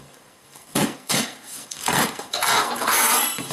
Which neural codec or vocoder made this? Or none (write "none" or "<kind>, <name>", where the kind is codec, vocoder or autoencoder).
codec, SNAC